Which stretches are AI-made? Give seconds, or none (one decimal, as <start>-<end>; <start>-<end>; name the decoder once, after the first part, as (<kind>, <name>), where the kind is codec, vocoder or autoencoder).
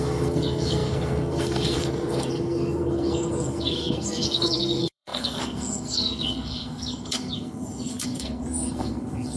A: 0.0-9.4 (codec, SNAC)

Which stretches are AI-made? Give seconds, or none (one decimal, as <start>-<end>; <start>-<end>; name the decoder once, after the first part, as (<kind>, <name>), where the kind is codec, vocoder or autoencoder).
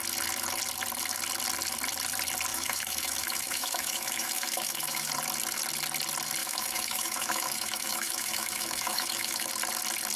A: 2.5-5.1 (autoencoder, DAC-VAE); 6.4-9.5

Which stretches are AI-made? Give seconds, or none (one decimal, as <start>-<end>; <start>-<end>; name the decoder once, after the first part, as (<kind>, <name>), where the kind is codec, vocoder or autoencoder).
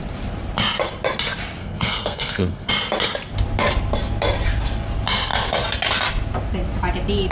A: 1.6-2.7 (codec, SNAC)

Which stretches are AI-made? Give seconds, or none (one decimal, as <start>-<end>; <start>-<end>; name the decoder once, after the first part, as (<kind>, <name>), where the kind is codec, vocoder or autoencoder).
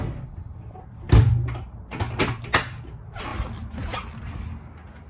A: none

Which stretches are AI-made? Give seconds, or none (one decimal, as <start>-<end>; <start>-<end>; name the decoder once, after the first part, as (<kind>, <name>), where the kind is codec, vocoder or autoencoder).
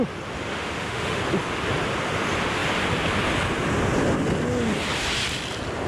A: 0.5-1.2 (autoencoder, DAC-VAE)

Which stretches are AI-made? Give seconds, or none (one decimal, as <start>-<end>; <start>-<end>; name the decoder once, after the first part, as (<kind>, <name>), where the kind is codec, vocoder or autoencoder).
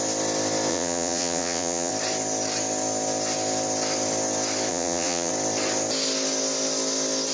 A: 0.7-1.9 (vocoder, Vocos); 4.7-5.3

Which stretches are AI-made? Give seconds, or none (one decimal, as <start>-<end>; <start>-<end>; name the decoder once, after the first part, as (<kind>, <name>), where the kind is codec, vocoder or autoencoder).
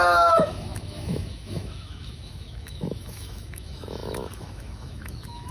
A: 0.0-5.5 (autoencoder, DAC-VAE)